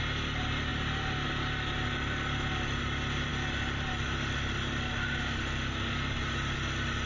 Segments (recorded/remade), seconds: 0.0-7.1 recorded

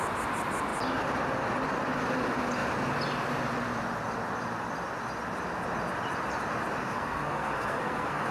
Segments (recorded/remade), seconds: 0.0-6.8 recorded; 6.8-8.3 remade

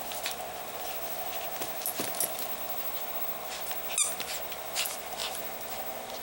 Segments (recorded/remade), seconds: 0.0-6.2 recorded

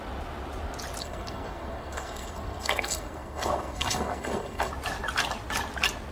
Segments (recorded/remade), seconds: 0.0-1.0 recorded; 1.0-4.7 remade; 4.7-6.1 recorded

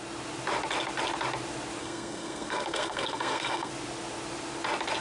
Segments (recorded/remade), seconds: 0.0-1.8 recorded; 1.8-3.7 remade; 3.7-5.0 recorded